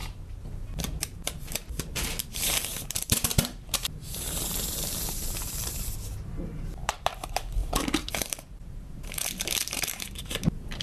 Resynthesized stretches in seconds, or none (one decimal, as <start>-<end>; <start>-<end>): 0.5-10.8